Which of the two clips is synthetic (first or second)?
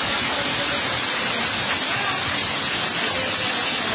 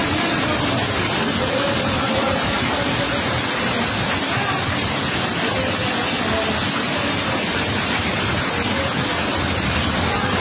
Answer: second